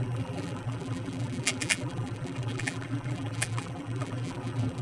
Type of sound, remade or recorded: remade